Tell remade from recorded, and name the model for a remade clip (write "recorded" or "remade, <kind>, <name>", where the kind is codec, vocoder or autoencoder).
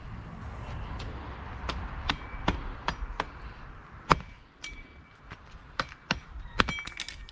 recorded